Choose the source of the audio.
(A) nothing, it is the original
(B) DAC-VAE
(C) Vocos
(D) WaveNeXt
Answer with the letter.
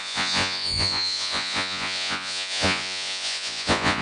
C